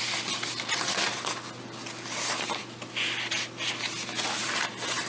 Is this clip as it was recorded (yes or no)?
yes